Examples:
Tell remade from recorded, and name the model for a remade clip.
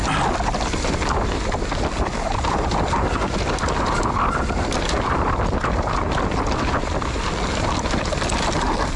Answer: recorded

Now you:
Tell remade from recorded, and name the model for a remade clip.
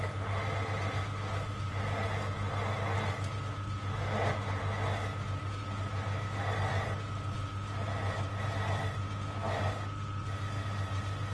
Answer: recorded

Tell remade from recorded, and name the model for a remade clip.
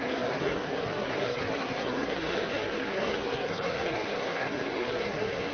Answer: remade, codec, SNAC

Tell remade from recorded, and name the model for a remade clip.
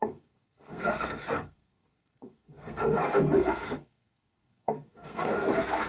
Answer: remade, codec, SNAC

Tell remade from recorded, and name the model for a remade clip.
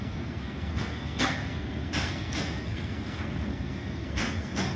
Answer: remade, codec, SNAC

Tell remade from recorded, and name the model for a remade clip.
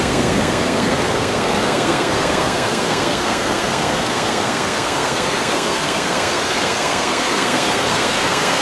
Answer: remade, codec, SNAC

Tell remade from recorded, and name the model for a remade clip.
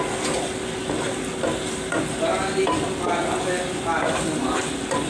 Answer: recorded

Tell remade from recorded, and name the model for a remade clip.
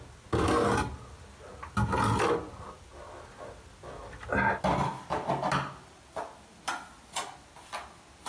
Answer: recorded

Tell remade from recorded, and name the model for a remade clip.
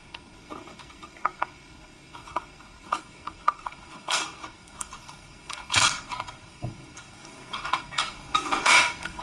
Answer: remade, codec, SNAC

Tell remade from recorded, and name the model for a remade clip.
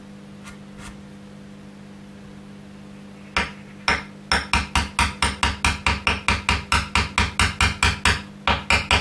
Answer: recorded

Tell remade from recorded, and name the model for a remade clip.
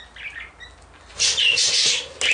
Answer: recorded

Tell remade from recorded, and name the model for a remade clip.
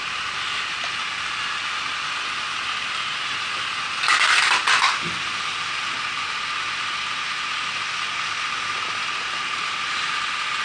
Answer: recorded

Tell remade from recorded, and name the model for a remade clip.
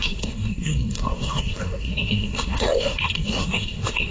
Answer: remade, codec, SNAC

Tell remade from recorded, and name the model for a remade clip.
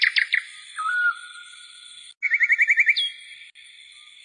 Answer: recorded